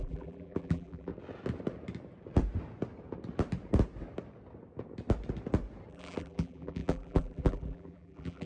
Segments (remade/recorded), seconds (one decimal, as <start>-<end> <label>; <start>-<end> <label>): 0.0-1.1 remade; 1.1-5.9 recorded; 5.9-8.5 remade